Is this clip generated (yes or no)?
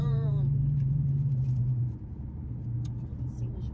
yes